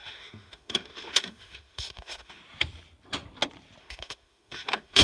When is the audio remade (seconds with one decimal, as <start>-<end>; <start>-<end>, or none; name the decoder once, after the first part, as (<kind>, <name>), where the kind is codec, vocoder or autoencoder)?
0.0-2.4 (autoencoder, DAC-VAE); 3.8-5.0